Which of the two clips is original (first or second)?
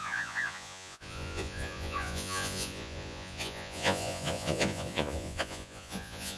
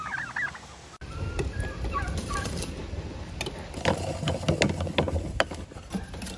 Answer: second